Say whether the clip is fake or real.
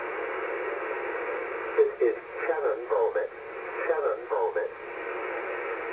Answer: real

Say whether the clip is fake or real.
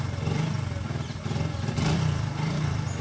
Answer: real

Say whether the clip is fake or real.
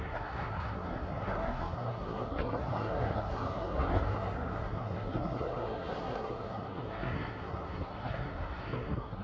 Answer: fake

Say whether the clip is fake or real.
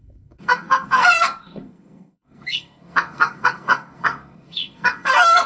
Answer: fake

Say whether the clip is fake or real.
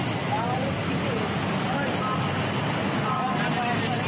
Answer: real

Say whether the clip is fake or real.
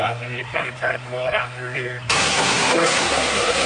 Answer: fake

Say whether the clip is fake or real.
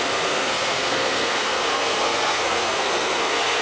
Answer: fake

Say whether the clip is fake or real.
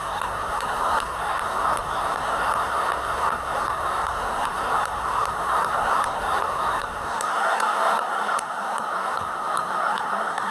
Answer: fake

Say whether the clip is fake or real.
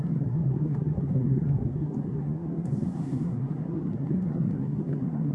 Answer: fake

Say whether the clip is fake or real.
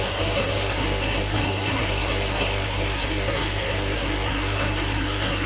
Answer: fake